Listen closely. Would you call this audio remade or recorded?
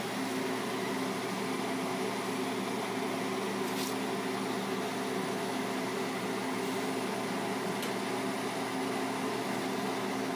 recorded